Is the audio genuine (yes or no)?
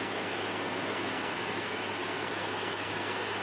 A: no